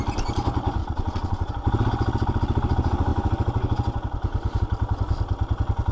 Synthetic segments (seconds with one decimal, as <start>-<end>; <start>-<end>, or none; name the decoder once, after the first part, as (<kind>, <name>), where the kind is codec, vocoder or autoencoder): 0.8-1.5 (vocoder, Vocos)